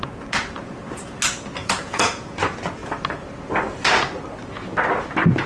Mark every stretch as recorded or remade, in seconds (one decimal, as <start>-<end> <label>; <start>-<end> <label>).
0.0-1.6 recorded; 1.6-2.4 remade; 2.4-5.5 recorded